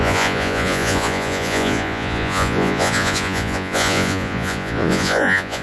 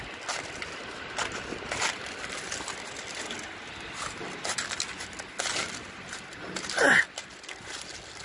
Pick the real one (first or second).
second